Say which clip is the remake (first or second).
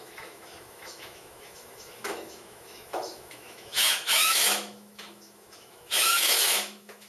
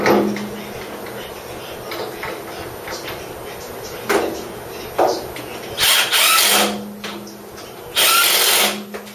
first